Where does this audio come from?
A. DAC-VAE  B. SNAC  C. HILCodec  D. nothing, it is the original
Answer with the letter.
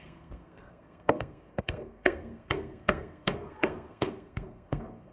B